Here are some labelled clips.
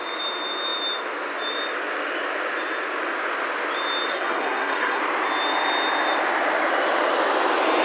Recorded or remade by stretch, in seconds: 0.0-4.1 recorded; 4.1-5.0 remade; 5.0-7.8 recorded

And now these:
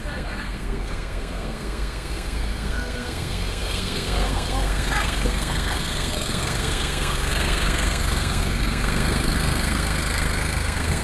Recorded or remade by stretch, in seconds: 0.0-11.0 remade

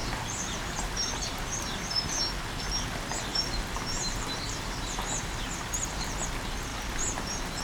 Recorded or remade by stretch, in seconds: 0.0-2.2 remade; 2.2-3.3 recorded; 3.3-6.2 remade; 6.2-6.7 recorded; 6.7-7.6 remade